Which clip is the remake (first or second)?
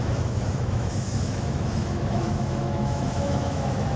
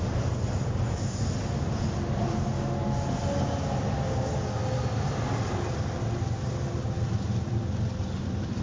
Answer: first